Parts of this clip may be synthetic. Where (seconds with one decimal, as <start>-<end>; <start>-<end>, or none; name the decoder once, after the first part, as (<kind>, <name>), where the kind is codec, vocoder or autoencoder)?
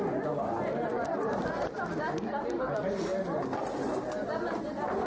none